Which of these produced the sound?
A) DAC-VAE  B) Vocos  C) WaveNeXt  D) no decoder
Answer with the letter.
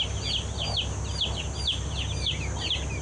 D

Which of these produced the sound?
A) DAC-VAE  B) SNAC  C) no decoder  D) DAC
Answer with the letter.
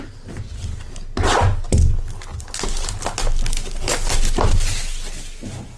C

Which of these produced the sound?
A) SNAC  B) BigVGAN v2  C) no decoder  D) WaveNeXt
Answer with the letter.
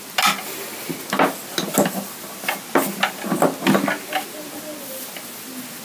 C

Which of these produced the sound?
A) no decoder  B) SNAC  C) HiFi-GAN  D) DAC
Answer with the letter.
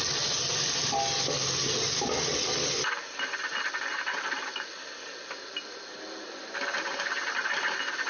A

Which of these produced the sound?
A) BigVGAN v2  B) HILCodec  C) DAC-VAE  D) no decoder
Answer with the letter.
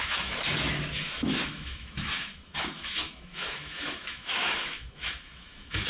C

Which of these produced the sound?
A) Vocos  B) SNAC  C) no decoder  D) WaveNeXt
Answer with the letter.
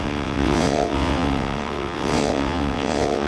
D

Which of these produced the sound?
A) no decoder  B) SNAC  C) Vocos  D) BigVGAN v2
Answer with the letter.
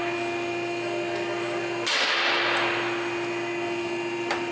A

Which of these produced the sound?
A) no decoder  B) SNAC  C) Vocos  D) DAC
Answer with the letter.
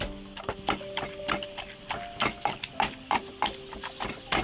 A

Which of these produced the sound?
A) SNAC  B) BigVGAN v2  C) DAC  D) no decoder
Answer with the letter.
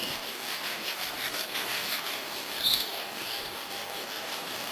C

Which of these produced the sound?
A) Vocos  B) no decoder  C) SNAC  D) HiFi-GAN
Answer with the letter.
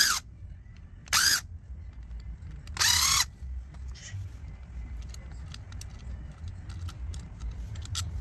B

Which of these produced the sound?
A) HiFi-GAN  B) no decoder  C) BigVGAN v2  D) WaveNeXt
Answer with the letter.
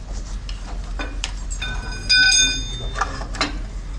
B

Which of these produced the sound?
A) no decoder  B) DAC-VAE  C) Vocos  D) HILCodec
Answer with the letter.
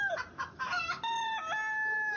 A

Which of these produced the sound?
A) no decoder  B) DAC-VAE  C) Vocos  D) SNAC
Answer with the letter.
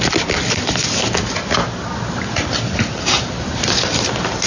A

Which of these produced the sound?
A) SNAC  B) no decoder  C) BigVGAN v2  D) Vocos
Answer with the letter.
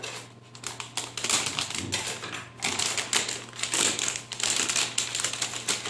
B